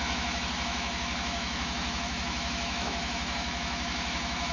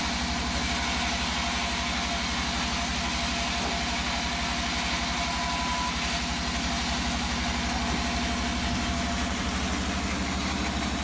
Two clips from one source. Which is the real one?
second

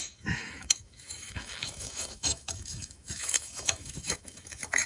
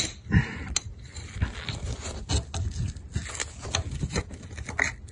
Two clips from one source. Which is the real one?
second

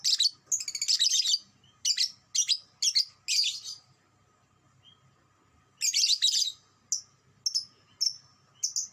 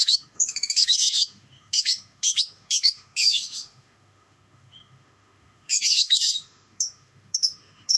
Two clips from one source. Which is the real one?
first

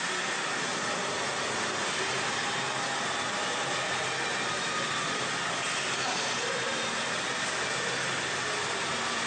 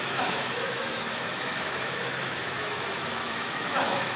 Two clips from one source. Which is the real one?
first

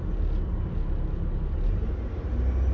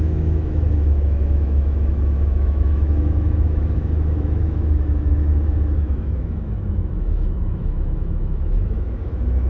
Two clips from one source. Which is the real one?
first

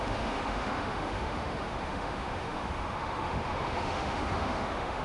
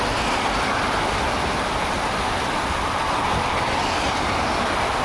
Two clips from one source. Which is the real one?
second